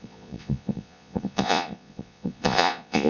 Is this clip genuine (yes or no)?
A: no